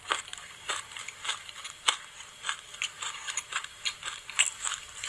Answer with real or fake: real